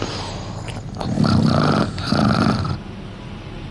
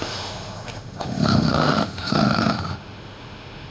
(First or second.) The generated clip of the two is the second